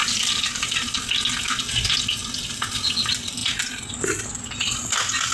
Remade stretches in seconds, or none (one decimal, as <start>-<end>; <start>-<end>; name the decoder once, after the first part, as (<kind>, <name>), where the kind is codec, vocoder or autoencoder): none